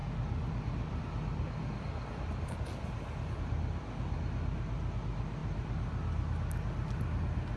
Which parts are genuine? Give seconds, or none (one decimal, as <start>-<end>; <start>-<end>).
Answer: 0.0-7.6